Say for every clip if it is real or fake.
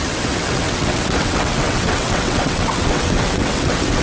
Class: fake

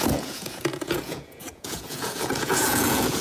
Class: fake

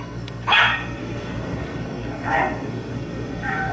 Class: fake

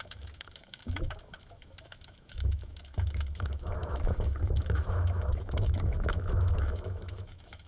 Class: fake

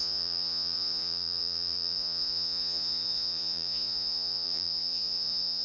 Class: fake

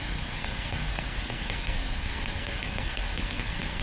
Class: fake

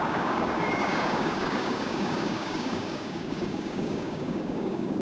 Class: fake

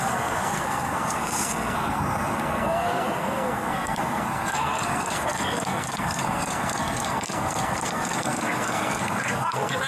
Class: fake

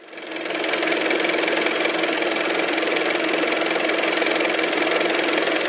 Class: real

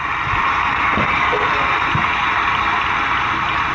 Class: real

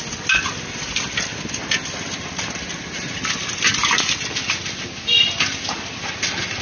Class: real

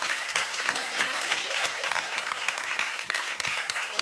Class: fake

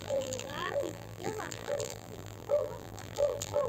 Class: fake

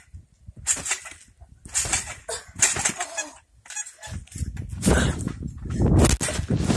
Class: real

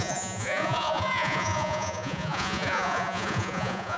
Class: fake